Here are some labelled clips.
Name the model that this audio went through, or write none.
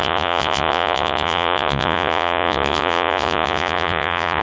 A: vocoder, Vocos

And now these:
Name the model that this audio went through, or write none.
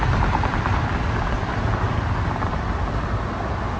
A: none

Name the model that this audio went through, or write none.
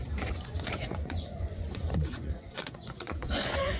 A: vocoder, Vocos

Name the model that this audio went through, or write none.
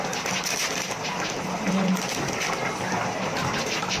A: none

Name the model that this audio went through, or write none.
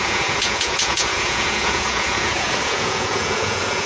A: vocoder, Vocos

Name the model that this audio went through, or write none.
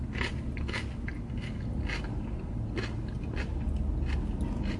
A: none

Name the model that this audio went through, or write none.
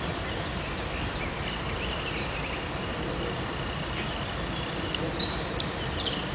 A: none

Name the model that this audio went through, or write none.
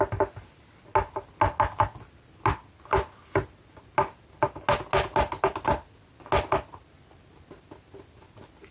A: none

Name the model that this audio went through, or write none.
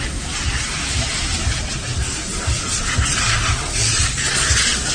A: none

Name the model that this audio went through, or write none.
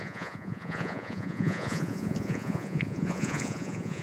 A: vocoder, Vocos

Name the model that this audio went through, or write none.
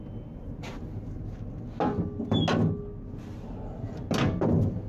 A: none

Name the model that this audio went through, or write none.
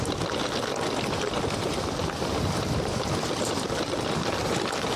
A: none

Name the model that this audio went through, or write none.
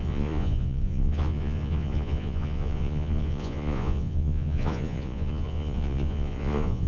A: vocoder, Vocos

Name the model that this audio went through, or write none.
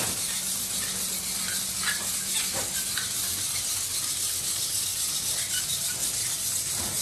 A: none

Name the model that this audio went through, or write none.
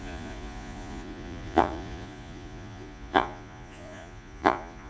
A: vocoder, Vocos